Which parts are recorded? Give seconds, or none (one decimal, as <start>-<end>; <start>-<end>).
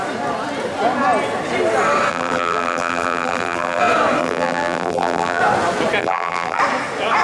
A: 0.0-2.1; 3.8-4.2; 5.4-6.0; 6.6-7.2